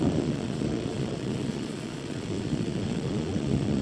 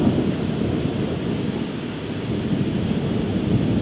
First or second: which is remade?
first